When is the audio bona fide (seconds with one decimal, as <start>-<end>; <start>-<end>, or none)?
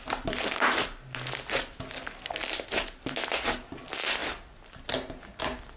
0.0-5.8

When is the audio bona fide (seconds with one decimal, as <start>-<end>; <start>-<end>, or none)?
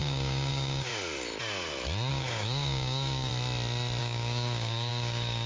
0.9-2.1; 3.3-4.0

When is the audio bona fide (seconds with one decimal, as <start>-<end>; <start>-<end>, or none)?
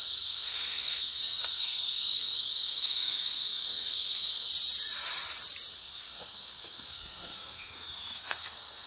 4.5-5.7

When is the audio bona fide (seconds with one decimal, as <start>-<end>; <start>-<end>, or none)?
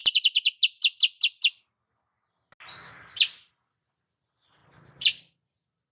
0.0-4.6; 5.2-5.9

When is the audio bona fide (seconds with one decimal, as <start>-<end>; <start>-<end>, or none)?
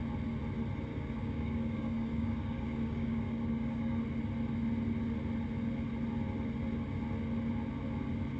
0.0-0.9; 4.0-8.4